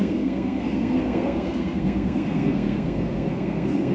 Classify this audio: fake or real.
fake